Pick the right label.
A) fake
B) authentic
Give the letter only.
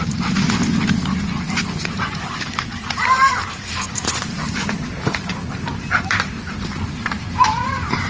A